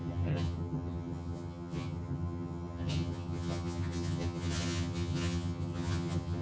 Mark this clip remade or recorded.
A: remade